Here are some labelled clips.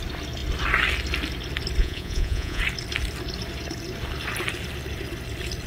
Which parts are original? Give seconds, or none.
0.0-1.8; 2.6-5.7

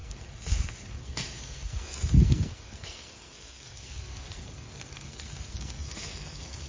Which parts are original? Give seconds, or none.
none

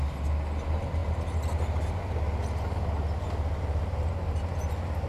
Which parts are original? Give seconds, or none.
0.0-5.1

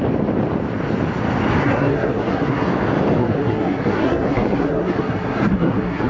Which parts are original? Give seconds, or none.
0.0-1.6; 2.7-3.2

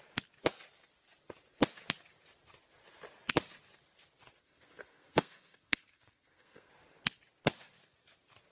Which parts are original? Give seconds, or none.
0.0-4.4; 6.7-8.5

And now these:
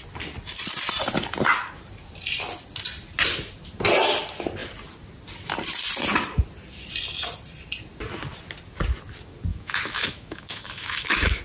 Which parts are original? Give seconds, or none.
0.0-9.5